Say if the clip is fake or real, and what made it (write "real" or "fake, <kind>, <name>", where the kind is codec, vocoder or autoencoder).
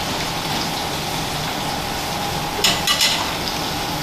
real